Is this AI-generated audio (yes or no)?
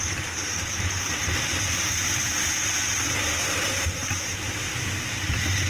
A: no